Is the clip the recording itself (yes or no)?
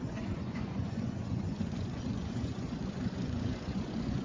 no